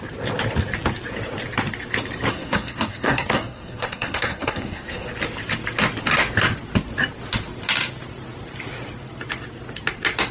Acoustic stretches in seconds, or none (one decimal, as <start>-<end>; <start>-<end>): 0.0-2.3; 5.1-10.3